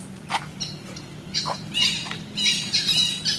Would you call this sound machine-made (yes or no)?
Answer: no